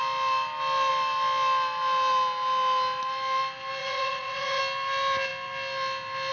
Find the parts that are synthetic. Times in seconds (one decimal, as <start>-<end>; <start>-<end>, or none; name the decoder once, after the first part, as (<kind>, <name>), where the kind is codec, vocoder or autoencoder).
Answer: 3.8-4.6 (vocoder, WaveNeXt)